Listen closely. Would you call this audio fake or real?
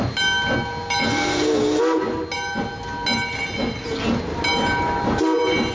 real